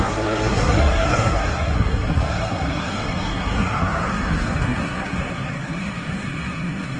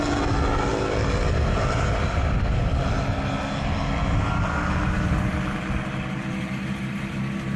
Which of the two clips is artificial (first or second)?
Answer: first